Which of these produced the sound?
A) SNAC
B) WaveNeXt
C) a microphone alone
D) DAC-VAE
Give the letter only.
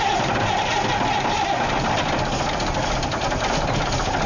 C